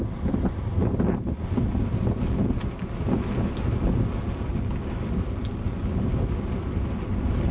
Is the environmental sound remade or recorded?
recorded